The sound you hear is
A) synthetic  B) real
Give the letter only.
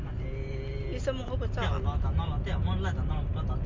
B